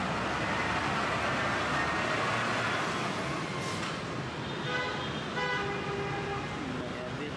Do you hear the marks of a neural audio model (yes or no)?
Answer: no